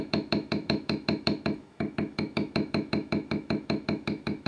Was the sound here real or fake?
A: fake